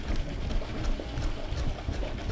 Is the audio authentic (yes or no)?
yes